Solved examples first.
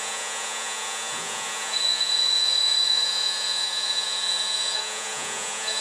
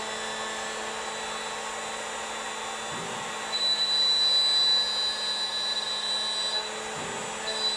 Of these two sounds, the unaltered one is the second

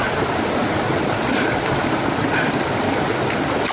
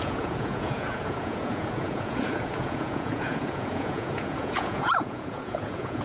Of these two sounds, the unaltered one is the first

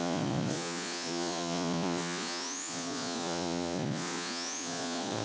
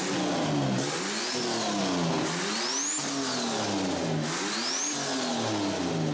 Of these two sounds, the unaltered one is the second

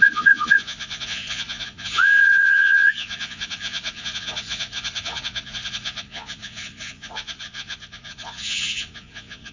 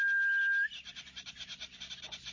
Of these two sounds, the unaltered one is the second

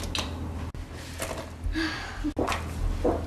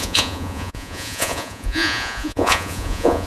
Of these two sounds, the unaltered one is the first